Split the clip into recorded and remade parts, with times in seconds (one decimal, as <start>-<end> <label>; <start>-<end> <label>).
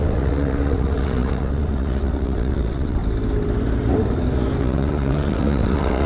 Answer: 0.0-3.0 remade; 3.0-4.6 recorded; 4.6-6.1 remade